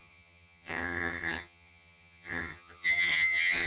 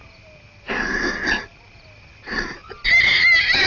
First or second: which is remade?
first